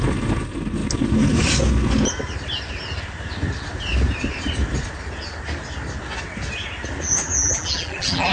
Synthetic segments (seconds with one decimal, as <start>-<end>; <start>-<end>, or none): 7.4-8.3